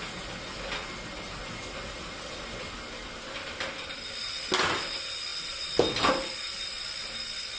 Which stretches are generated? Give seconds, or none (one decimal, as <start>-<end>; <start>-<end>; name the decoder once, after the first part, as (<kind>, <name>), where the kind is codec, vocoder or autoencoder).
none